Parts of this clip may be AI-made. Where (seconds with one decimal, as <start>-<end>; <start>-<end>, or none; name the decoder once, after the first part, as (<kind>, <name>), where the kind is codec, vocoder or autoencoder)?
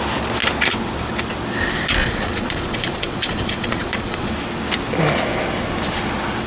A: 2.0-4.3 (vocoder, Vocos)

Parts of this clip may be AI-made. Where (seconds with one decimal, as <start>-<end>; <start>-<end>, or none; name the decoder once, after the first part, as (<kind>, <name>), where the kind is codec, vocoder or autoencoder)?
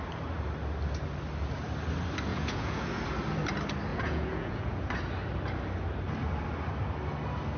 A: 2.3-3.0 (vocoder, Vocos); 3.9-4.9